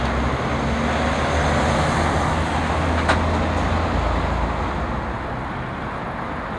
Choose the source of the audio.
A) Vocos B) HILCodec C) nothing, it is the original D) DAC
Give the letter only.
C